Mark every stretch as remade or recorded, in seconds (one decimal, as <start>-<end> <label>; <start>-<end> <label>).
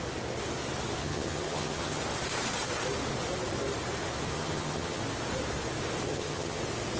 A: 0.0-1.0 recorded; 1.0-2.0 remade; 2.0-4.3 recorded; 4.3-5.0 remade; 5.0-6.1 recorded; 6.1-6.6 remade; 6.6-7.0 recorded